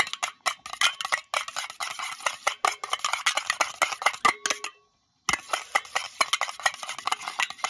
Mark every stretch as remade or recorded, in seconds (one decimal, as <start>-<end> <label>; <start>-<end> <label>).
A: 0.0-7.7 recorded